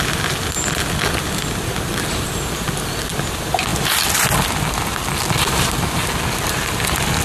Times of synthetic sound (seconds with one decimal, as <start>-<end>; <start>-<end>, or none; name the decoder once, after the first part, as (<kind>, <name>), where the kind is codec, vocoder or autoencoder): 1.9-3.1 (vocoder, BigVGAN v2); 4.9-6.7

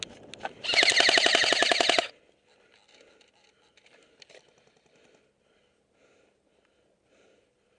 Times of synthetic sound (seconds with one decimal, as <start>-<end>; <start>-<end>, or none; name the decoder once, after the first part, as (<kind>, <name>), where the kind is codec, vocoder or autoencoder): none